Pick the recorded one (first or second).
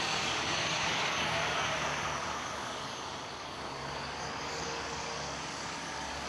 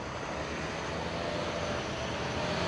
second